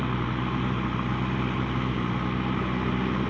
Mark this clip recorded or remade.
recorded